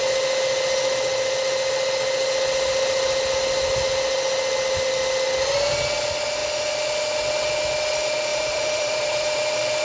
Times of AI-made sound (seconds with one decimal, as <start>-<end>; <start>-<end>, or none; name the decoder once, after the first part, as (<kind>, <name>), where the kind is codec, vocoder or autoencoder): 8.3-9.4 (vocoder, BigVGAN v2)